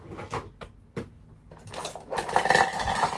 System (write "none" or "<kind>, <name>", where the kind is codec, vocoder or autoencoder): none